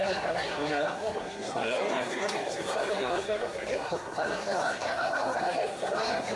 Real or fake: fake